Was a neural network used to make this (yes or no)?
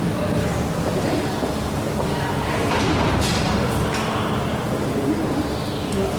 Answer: no